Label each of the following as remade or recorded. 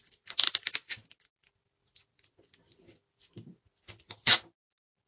recorded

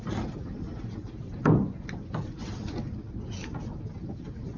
recorded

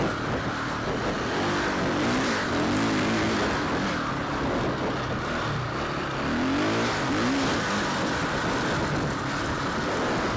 recorded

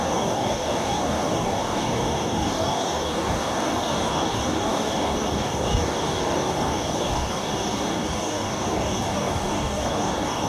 remade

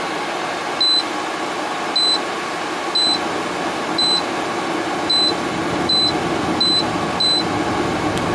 recorded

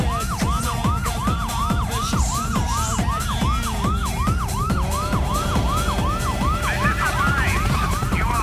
recorded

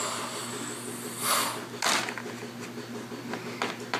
recorded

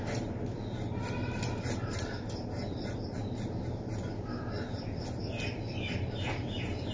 recorded